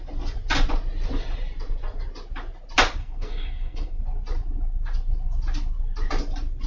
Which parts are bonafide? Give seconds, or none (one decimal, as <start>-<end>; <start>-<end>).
0.0-3.0; 4.0-6.7